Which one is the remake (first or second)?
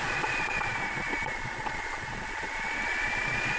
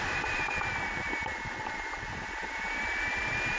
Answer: first